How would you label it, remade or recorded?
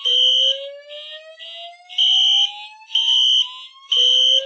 recorded